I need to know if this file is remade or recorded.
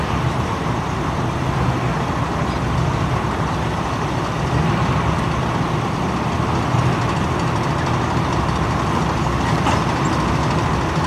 recorded